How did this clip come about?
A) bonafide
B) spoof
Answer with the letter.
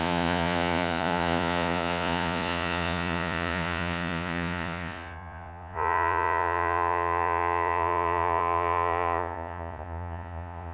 B